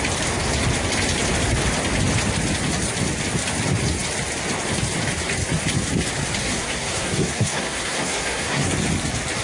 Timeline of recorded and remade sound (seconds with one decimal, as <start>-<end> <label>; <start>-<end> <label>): 0.0-6.4 recorded; 6.4-8.7 remade; 8.7-9.4 recorded